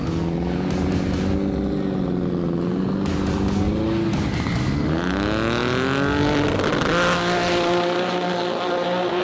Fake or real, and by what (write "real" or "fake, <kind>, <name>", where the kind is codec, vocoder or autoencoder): real